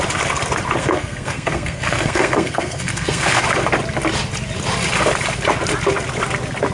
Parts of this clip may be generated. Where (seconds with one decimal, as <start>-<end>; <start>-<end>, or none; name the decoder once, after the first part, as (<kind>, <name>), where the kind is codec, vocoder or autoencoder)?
0.8-3.4 (codec, SNAC)